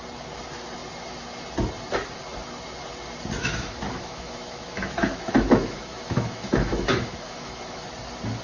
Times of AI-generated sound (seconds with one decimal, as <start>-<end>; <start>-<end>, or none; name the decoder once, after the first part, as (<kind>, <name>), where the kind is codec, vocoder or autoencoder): 3.4-7.9 (autoencoder, DAC-VAE)